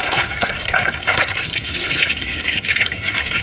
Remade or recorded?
remade